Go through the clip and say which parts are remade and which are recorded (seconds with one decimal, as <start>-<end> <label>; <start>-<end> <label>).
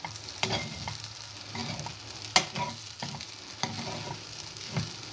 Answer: 0.0-5.1 recorded